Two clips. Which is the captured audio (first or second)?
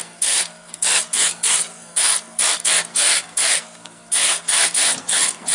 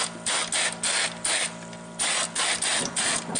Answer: second